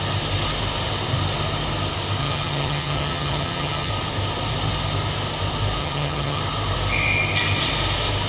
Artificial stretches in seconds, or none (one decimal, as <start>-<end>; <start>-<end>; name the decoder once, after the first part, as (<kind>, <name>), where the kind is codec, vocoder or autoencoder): 2.2-3.9 (vocoder, HiFi-GAN); 5.8-6.4